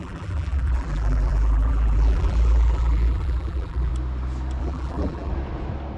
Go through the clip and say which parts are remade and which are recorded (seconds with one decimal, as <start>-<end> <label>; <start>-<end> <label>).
0.0-3.9 remade; 3.9-4.6 recorded; 4.6-5.3 remade; 5.3-6.0 recorded